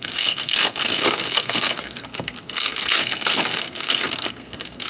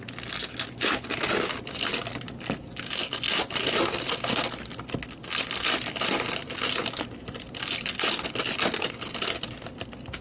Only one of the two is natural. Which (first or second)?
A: second